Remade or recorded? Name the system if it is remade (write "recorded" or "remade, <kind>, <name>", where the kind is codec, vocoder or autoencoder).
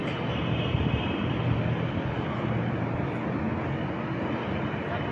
recorded